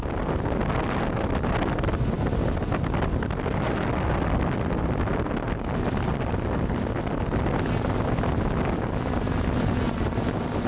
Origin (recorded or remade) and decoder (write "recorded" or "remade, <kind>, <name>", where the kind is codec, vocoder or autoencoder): recorded